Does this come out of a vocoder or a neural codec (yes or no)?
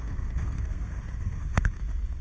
yes